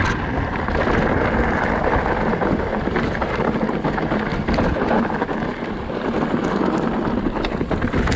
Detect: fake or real real